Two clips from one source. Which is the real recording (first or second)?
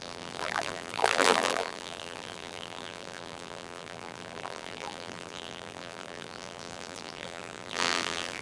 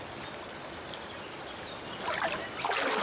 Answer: second